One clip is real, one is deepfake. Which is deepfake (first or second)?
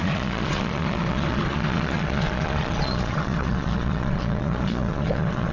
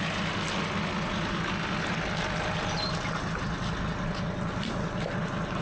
first